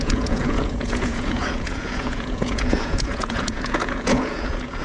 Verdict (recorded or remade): remade